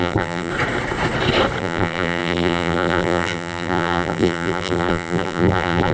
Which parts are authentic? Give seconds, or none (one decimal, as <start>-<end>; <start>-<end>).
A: 0.5-1.6